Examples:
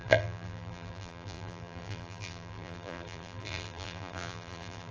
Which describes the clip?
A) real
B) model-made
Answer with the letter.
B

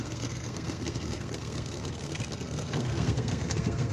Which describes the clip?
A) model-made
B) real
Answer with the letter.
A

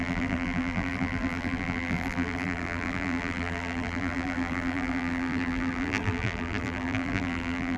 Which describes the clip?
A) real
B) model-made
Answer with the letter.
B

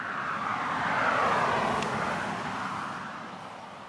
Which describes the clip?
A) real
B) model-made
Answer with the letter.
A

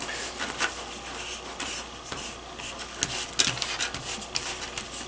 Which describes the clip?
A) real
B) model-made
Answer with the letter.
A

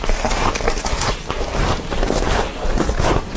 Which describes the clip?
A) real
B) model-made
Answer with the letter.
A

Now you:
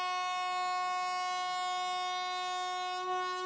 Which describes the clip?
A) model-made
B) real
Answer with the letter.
B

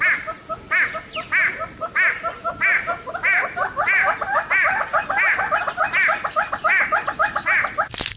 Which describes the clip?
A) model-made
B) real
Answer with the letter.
B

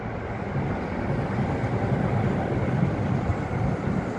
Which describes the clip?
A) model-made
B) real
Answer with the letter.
B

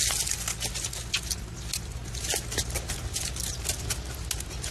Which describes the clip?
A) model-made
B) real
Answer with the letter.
B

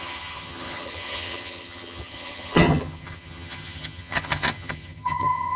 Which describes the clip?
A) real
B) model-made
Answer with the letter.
B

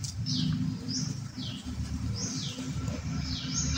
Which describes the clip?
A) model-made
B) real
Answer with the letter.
B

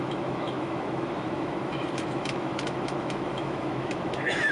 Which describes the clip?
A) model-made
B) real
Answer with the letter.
A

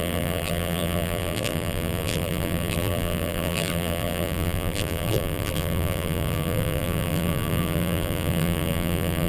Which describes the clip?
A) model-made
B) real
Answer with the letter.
A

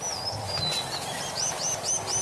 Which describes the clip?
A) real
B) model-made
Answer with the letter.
A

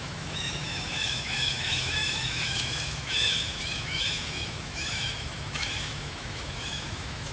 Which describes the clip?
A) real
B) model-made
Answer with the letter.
B